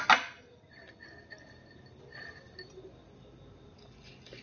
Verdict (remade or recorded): recorded